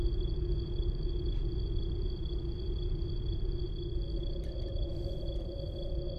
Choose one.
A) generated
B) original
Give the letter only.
B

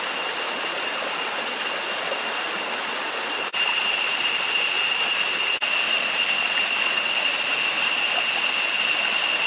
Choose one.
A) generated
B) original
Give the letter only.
B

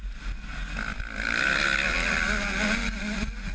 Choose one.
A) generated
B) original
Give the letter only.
B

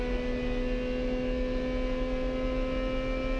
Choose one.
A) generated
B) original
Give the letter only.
B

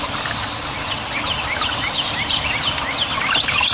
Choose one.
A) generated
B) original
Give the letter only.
B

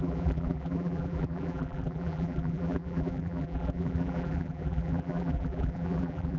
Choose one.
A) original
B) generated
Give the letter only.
B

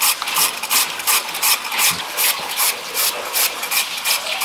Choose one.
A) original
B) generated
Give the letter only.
A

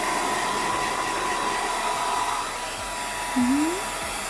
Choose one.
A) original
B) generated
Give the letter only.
A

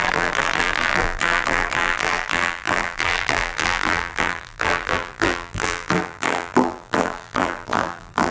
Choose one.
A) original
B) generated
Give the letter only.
B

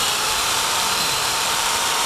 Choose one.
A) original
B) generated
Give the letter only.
B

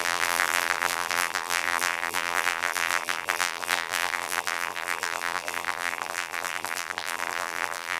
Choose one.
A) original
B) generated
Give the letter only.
B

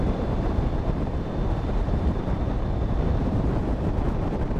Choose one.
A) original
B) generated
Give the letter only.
B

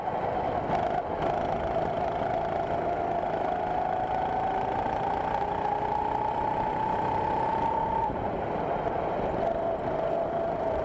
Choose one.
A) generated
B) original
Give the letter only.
B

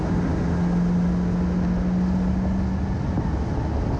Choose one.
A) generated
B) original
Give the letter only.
B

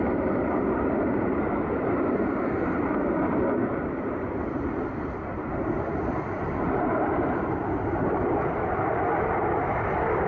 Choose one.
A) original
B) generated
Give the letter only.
B